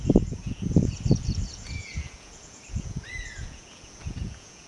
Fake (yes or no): yes